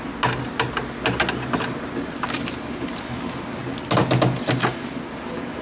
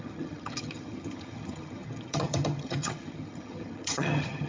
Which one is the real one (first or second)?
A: first